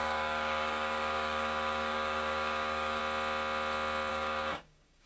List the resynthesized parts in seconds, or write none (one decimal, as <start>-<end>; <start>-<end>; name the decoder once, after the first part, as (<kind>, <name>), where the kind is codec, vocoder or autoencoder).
0.0-3.0 (codec, DAC); 4.1-5.1